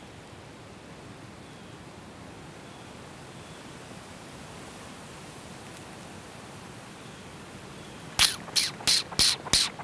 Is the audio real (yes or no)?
yes